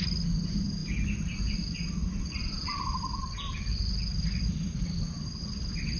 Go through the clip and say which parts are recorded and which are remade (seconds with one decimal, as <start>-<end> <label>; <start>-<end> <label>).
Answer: 0.0-2.0 recorded; 2.0-5.1 remade; 5.1-6.0 recorded